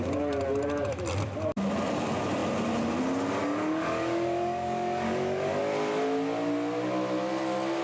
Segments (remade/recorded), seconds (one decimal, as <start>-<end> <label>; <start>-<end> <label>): 0.0-3.4 recorded; 3.4-5.6 remade; 5.6-7.8 recorded